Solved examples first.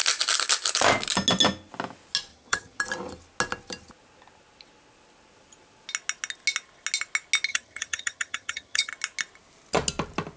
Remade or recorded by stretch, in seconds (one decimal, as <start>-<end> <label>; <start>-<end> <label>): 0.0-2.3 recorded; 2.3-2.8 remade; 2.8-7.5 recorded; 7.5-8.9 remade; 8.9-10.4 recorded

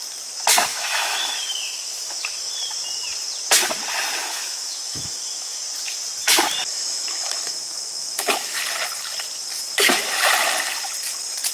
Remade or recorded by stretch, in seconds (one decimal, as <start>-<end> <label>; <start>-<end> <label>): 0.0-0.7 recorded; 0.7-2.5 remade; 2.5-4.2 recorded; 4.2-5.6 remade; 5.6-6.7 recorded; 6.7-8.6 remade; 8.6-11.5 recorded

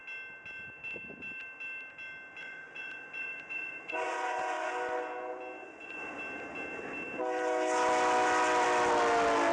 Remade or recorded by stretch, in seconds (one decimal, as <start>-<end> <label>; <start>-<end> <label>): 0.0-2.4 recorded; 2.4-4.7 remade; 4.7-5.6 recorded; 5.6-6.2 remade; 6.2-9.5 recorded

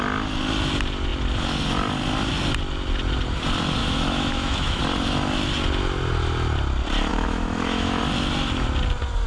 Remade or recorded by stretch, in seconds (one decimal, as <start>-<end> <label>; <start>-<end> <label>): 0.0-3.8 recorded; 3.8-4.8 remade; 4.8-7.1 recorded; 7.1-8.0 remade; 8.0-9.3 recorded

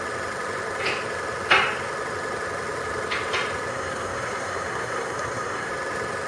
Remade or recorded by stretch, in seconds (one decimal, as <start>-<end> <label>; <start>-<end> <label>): 0.0-3.7 recorded; 3.7-5.7 remade; 5.7-6.3 recorded

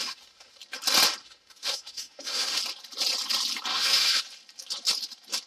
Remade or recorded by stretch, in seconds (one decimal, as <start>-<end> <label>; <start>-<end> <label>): 0.0-0.6 remade; 0.6-1.2 recorded; 1.2-2.6 remade; 2.6-3.7 recorded; 3.7-4.2 remade; 4.2-5.5 recorded